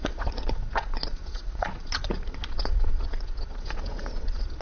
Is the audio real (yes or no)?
no